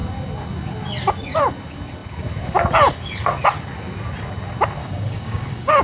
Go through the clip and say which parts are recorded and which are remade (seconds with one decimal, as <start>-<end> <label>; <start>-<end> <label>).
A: 0.0-4.8 recorded; 4.8-5.8 remade